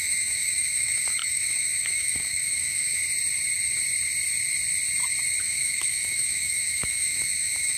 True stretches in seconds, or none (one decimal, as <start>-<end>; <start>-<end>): 3.0-5.4